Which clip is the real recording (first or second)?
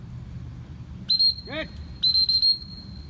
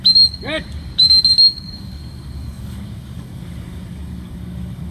first